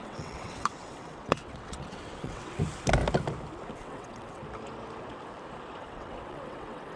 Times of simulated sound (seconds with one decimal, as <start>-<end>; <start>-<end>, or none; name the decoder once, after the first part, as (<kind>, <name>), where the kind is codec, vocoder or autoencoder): 0.0-2.6 (vocoder, WaveNeXt); 3.8-4.4; 5.8-7.0